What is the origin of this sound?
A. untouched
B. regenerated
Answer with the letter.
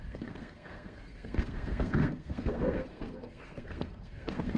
B